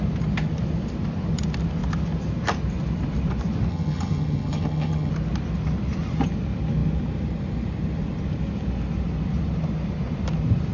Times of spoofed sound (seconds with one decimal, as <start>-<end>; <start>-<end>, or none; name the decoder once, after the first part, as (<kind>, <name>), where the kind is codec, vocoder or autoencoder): 3.7-5.1 (vocoder, HiFi-GAN)